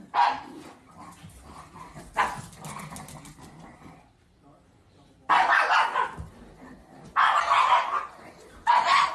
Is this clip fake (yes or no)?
no